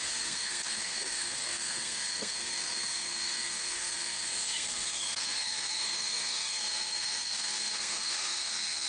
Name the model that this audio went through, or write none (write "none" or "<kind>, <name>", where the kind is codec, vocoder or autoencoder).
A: codec, SNAC